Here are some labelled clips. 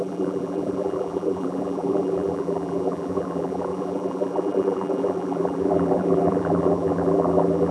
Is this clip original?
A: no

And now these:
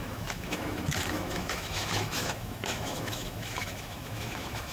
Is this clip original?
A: no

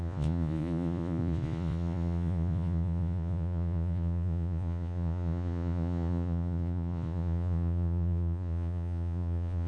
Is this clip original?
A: no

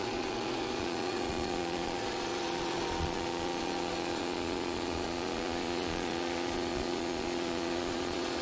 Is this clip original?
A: no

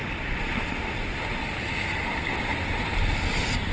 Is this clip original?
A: yes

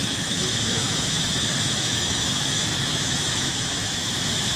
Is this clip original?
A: no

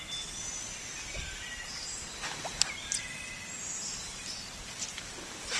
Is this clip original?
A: yes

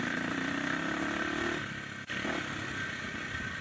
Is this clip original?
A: yes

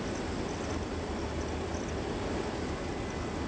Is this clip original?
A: yes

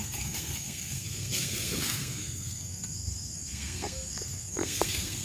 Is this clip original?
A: no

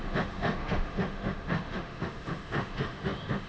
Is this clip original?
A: no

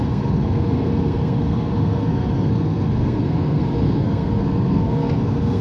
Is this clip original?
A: no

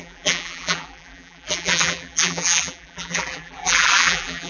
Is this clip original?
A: no